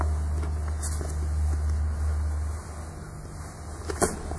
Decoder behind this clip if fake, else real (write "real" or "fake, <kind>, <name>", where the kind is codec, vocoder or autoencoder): real